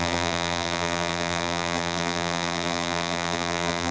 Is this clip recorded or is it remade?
remade